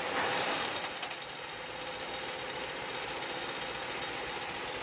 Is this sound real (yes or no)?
yes